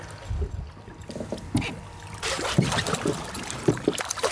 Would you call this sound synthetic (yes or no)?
no